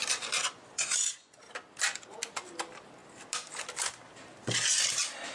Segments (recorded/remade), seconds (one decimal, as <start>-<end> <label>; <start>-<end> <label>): 0.0-0.4 recorded; 0.4-1.4 remade; 1.4-5.3 recorded

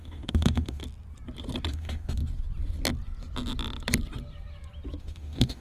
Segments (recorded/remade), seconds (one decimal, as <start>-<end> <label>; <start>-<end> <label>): 0.0-0.8 remade; 0.8-1.7 recorded; 1.7-2.2 remade; 2.2-5.0 recorded; 5.0-5.6 remade

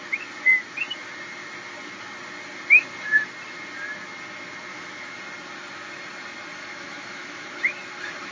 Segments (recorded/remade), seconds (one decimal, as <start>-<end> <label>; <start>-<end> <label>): 0.0-4.7 recorded; 4.7-5.2 remade; 5.2-6.6 recorded; 6.6-7.6 remade; 7.6-8.3 recorded

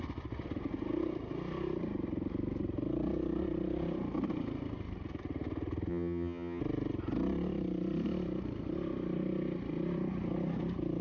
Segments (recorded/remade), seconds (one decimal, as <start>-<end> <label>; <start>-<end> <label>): 0.0-5.9 recorded; 5.9-6.6 remade; 6.6-11.0 recorded

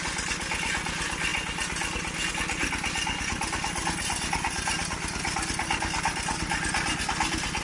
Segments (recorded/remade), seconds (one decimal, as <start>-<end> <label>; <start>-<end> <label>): 0.0-7.6 recorded

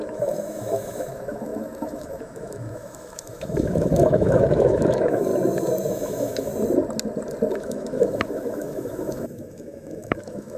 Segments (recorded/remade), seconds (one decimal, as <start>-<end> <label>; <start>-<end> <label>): 0.0-5.3 remade; 5.3-5.9 recorded; 5.9-6.5 remade; 6.5-7.5 recorded; 7.5-10.6 remade

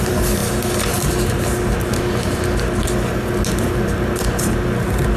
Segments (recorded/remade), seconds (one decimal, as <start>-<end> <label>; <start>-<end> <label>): 0.0-0.4 remade; 0.4-3.5 recorded; 3.5-5.2 remade

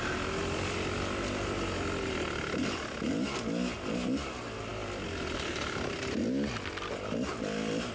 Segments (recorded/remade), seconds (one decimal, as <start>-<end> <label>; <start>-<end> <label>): 0.0-7.9 recorded